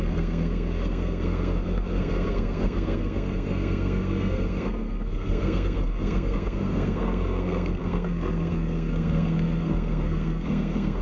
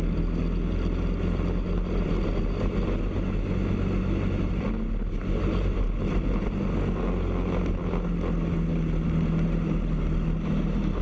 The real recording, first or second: second